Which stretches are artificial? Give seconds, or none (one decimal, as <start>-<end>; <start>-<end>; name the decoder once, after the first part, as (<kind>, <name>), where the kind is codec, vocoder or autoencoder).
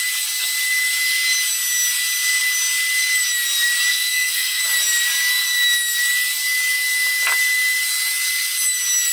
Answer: 3.9-4.6 (codec, SNAC)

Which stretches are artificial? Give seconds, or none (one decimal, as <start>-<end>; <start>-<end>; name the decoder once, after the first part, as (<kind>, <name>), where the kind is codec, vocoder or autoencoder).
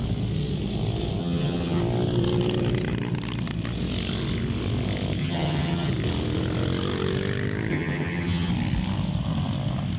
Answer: 1.2-1.8 (vocoder, HiFi-GAN); 5.2-5.9; 7.7-8.5